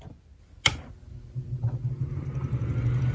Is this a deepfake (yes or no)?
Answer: no